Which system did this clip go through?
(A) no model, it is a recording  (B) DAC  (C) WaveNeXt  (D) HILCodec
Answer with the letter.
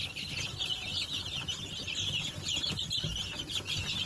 A